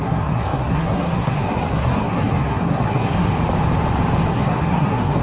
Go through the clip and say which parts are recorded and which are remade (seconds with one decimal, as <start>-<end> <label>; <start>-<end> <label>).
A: 0.0-3.3 remade; 3.3-4.3 recorded; 4.3-5.2 remade